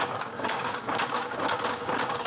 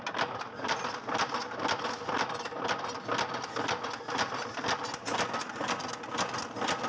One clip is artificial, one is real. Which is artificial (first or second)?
first